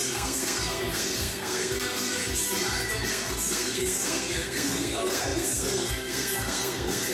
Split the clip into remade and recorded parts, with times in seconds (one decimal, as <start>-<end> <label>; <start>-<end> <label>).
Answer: 0.0-2.2 remade; 2.2-3.1 recorded; 3.1-7.1 remade